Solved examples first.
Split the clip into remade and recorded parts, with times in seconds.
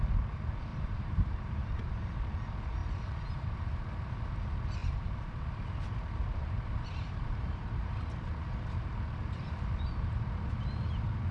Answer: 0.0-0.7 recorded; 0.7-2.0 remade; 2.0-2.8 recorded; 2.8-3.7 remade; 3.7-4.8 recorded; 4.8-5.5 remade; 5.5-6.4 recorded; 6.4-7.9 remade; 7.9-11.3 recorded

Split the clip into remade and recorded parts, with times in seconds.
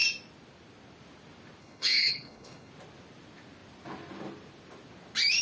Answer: 0.0-1.6 recorded; 1.6-2.7 remade; 2.7-5.4 recorded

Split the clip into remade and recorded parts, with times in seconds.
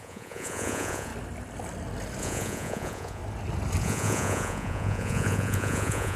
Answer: 0.0-1.1 remade; 1.1-2.2 recorded; 2.2-3.2 remade; 3.2-3.8 recorded; 3.8-6.2 remade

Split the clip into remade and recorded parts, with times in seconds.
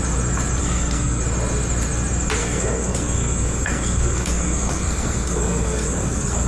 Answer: 0.0-0.6 recorded; 0.6-1.2 remade; 1.2-2.4 recorded; 2.4-6.5 remade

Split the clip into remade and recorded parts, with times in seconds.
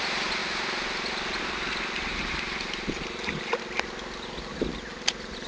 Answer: 0.0-5.5 recorded